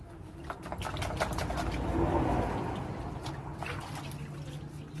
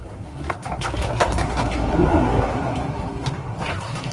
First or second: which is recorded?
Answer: first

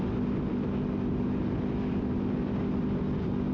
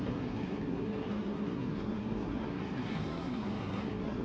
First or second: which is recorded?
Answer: first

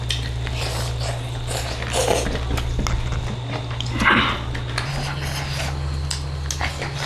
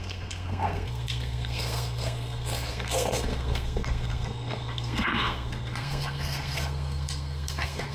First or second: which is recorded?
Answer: first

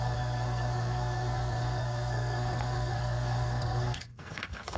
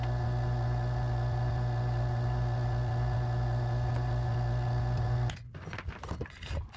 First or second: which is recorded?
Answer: second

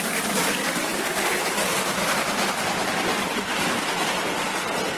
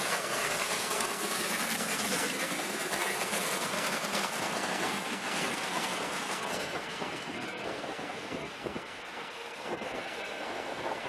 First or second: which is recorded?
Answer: first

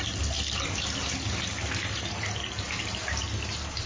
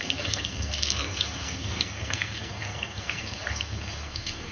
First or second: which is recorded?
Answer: first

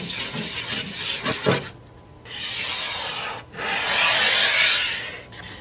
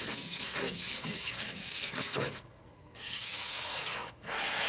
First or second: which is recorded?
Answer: first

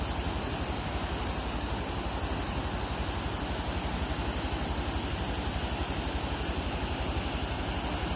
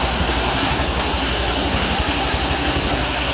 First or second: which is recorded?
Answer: first